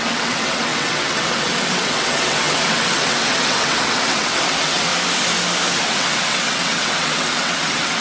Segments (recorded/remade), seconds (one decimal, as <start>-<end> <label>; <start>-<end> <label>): 0.0-4.9 remade; 4.9-5.8 recorded; 5.8-8.0 remade